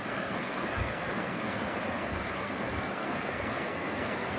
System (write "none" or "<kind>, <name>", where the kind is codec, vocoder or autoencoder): codec, SNAC